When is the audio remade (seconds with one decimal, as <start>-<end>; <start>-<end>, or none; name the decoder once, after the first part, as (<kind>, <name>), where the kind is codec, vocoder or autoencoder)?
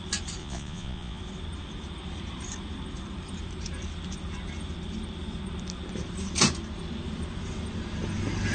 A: 0.4-1.2 (vocoder, Vocos)